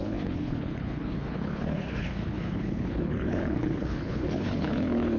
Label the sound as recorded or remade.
remade